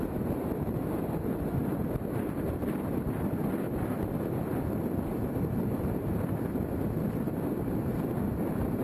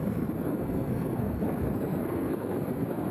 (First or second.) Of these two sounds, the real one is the first